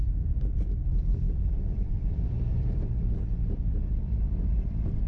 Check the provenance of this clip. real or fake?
fake